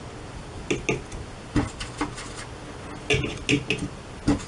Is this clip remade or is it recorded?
recorded